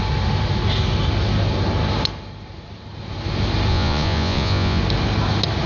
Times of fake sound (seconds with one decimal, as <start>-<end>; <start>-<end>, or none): 3.7-4.8